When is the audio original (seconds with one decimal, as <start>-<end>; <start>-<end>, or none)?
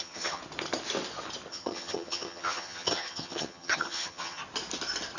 0.4-1.5; 4.4-5.2